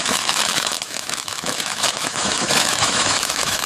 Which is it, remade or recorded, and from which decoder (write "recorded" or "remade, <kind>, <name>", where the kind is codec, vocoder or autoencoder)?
remade, autoencoder, DAC-VAE